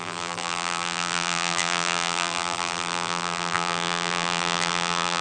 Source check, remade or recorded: remade